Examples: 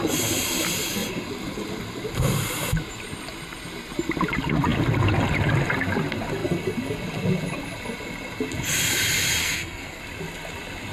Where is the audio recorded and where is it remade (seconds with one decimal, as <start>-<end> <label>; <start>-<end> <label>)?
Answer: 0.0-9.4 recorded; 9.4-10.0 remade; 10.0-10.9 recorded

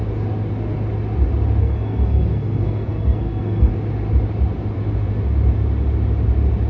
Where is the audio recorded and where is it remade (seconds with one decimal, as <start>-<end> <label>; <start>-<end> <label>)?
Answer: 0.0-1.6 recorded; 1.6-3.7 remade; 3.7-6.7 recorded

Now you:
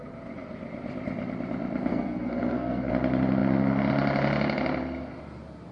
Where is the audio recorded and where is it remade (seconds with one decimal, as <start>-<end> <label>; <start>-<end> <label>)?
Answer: 0.0-1.9 recorded; 1.9-2.9 remade; 2.9-5.7 recorded